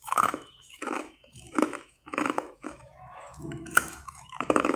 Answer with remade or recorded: remade